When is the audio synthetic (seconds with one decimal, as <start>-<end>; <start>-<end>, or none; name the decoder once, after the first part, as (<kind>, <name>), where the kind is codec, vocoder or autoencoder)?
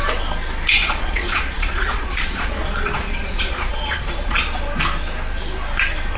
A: 0.8-4.5 (vocoder, Vocos)